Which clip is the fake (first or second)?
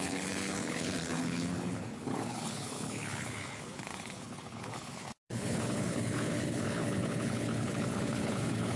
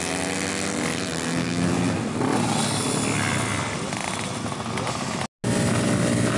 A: first